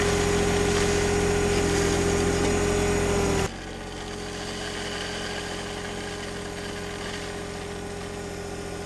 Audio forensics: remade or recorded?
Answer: recorded